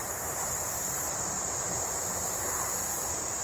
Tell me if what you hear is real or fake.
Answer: fake